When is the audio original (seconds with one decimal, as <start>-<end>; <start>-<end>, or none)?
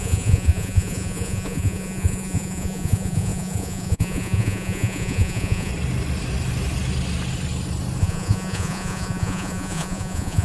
5.7-8.0